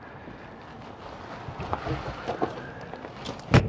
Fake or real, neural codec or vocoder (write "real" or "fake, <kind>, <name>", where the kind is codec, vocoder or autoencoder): real